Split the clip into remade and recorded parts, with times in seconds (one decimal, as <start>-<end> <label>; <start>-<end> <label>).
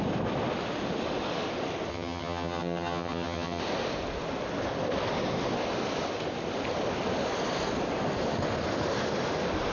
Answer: 0.0-1.9 recorded; 1.9-3.6 remade; 3.6-9.7 recorded